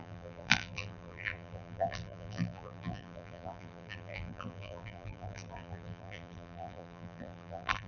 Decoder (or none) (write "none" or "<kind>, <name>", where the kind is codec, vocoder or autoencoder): vocoder, BigVGAN v2